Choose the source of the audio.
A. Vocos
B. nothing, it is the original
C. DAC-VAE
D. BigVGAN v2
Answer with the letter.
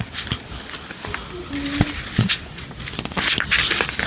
B